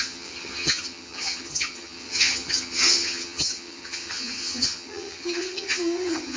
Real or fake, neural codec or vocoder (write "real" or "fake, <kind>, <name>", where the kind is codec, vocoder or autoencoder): fake, vocoder, HiFi-GAN